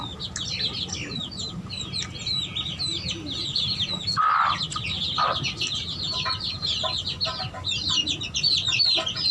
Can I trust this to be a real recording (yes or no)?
yes